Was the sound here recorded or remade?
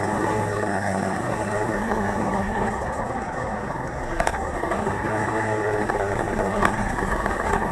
remade